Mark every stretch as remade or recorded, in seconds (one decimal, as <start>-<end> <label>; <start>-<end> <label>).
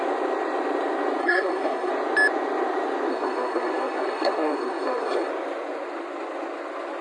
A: 0.0-1.2 recorded; 1.2-1.9 remade; 1.9-3.1 recorded; 3.1-5.3 remade; 5.3-7.0 recorded